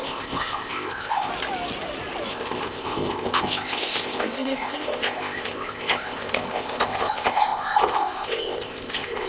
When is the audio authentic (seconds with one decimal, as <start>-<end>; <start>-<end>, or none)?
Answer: 1.3-2.3